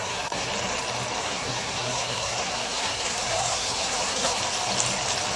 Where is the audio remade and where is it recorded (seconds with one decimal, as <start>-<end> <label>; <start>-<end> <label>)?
0.0-0.5 remade; 0.5-1.2 recorded; 1.2-4.4 remade; 4.4-5.4 recorded